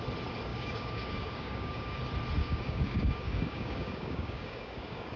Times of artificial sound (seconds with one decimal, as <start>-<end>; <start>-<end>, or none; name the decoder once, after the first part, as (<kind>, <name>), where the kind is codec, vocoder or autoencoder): 0.5-2.0 (codec, DAC); 2.4-5.2